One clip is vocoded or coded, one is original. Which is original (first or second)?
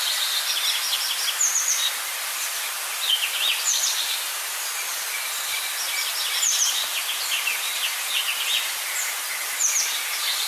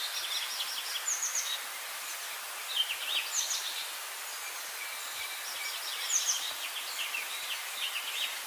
second